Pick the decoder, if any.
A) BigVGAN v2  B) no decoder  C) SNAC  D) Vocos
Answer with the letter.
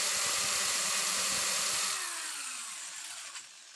B